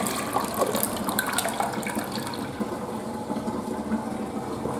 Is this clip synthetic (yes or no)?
no